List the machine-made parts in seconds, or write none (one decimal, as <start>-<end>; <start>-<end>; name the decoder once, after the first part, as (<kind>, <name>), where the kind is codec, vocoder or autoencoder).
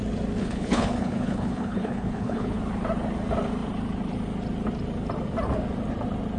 0.4-2.6 (codec, HILCodec)